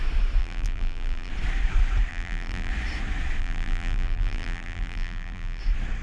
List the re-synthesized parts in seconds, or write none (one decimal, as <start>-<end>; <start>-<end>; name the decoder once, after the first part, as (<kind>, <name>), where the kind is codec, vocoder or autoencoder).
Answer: 0.4-1.3 (vocoder, BigVGAN v2); 2.1-2.7; 3.4-5.6